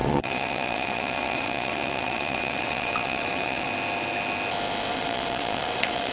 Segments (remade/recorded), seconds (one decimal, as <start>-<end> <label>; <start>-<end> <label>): 0.0-3.7 remade; 3.7-4.9 recorded; 4.9-6.1 remade